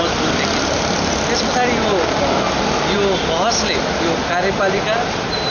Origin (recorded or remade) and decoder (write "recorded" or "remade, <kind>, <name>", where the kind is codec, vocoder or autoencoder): recorded